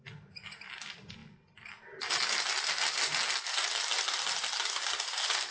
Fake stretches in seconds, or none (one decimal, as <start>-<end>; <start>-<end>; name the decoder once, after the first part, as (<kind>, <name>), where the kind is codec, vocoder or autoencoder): none